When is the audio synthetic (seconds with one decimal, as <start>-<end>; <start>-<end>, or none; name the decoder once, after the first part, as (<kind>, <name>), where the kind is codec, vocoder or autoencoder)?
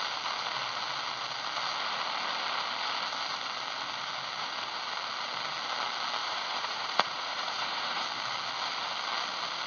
6.2-8.0 (vocoder, Vocos)